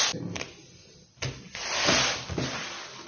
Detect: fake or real real